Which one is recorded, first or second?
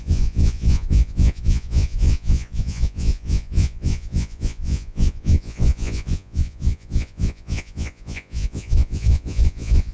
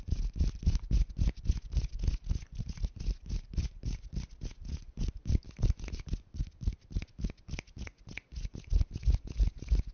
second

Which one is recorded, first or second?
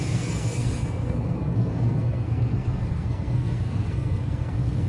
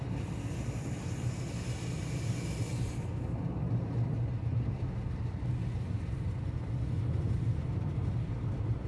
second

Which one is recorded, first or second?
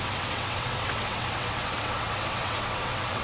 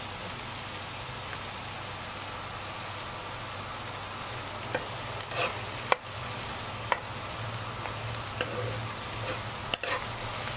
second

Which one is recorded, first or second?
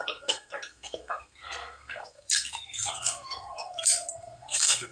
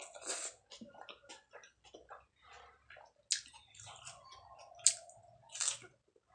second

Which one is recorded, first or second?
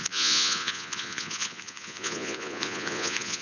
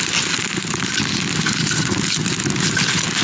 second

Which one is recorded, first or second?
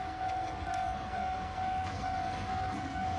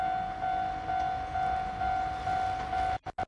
second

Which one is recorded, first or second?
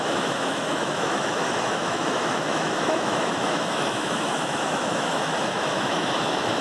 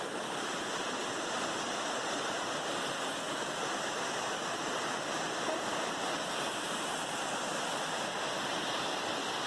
second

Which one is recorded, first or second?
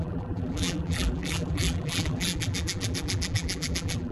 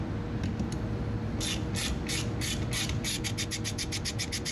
second